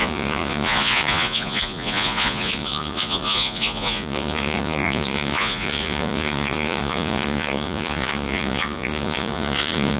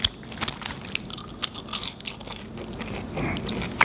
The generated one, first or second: first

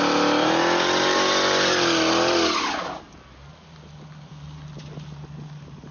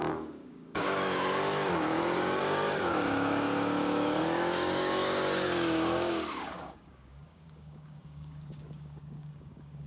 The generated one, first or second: second